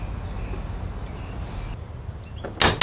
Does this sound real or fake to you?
real